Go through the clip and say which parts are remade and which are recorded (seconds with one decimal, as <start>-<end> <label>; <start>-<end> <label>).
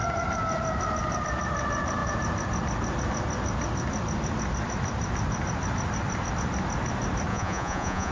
0.0-7.3 recorded; 7.3-8.1 remade